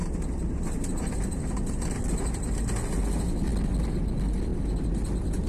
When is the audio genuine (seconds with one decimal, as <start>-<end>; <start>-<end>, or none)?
0.0-5.5